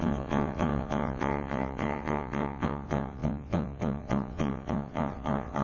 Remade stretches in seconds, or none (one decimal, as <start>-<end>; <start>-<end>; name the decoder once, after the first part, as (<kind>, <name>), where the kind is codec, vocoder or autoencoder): 0.0-5.6 (vocoder, WaveNeXt)